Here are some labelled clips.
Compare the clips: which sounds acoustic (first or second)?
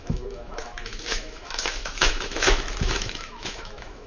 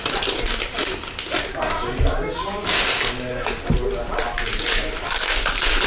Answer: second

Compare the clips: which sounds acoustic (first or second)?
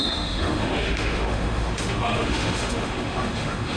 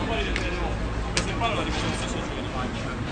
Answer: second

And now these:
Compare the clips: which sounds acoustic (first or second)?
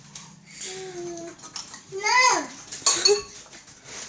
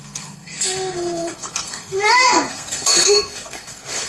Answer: first